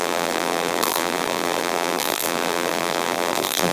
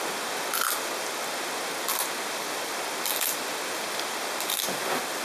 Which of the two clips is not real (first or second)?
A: first